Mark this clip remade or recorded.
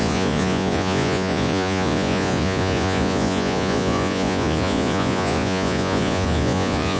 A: remade